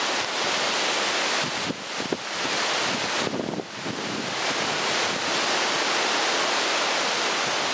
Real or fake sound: real